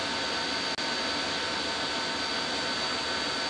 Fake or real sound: real